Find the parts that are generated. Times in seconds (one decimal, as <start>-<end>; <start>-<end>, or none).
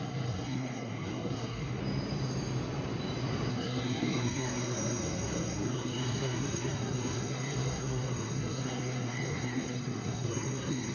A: 0.0-1.8; 3.5-10.9